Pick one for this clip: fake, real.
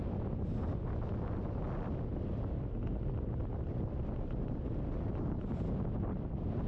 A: real